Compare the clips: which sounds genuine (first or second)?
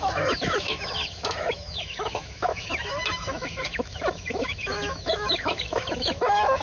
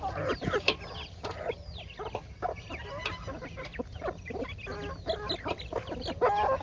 second